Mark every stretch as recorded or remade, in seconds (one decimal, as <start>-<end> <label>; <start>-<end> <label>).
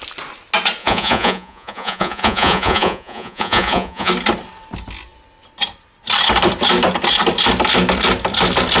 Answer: 0.0-0.8 recorded; 0.8-4.1 remade; 4.1-8.8 recorded